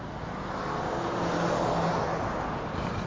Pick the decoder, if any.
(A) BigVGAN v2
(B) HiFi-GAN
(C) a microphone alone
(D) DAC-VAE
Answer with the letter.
C